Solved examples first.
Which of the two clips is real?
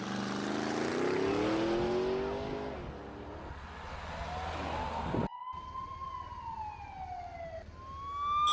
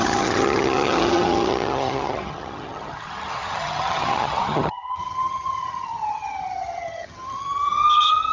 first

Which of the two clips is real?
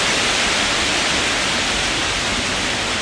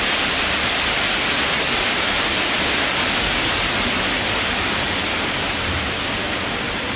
first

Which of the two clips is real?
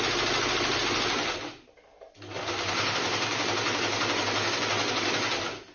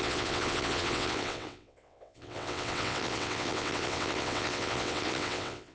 first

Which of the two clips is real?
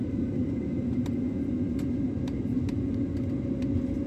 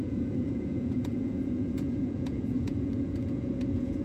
first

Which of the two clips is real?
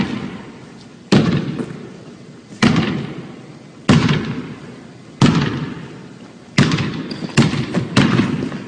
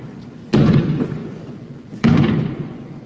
first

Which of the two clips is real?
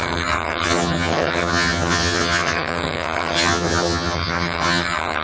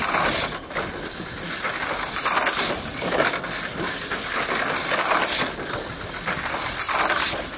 second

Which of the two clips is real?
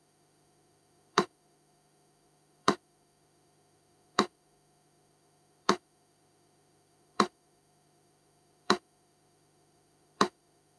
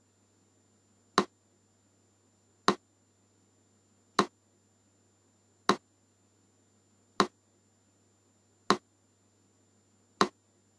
second